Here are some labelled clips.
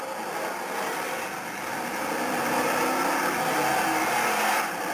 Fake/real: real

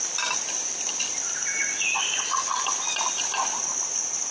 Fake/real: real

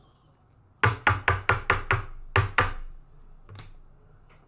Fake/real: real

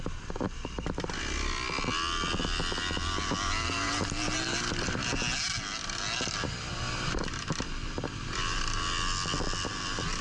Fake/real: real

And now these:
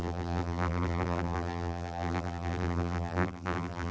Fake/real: fake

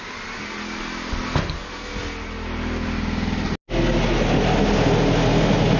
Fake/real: real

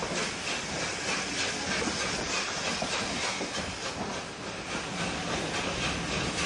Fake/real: real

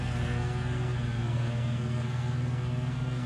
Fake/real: fake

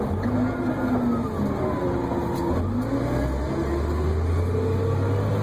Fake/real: real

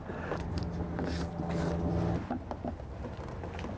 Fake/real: real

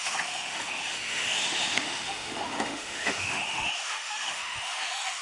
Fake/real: fake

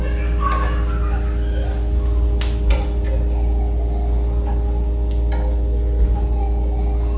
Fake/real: real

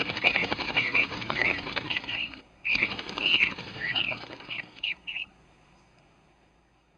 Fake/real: fake